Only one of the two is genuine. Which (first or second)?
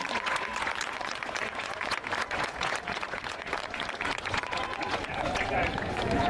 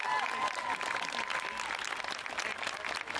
second